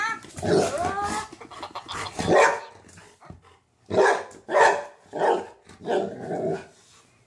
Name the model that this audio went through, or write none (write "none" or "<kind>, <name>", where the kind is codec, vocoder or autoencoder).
none